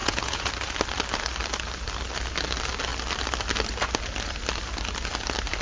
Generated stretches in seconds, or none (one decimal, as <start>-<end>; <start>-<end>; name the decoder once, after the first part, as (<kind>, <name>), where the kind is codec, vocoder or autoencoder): 0.0-0.5 (vocoder, Vocos)